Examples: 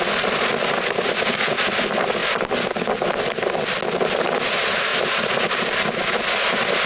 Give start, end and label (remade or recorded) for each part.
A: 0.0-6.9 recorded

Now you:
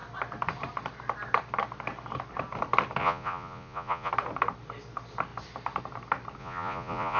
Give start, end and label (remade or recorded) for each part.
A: 0.0-3.0 recorded; 3.0-4.1 remade; 4.1-6.4 recorded; 6.4-7.2 remade